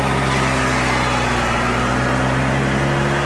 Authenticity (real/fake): real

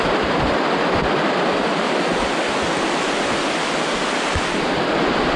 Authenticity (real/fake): real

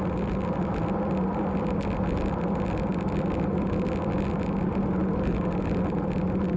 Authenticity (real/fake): real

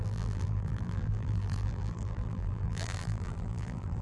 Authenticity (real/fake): fake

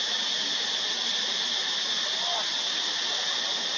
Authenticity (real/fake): real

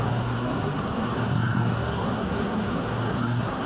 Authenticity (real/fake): fake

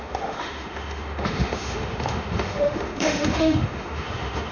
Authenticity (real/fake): fake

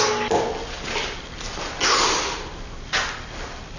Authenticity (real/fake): real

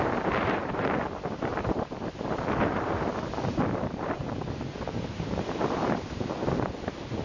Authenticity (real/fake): fake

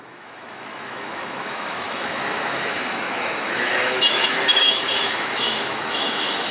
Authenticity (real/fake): fake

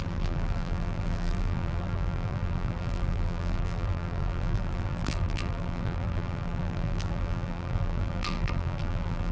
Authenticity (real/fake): fake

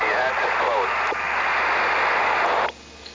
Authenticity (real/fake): real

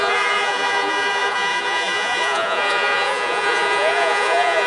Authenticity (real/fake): fake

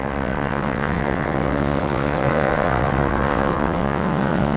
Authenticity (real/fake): fake